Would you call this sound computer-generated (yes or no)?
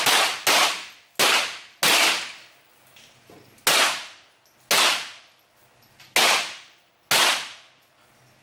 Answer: no